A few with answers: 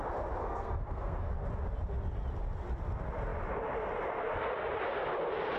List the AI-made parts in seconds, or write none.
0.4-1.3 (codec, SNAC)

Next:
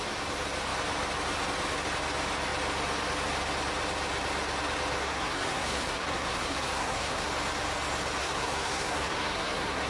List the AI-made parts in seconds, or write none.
5.0-7.3 (codec, SNAC); 8.2-9.9

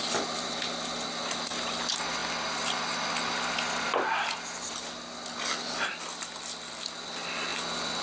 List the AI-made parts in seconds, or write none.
none

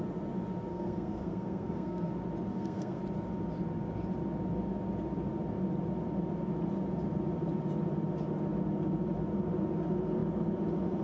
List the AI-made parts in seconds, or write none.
0.7-2.1 (codec, SNAC); 2.5-3.0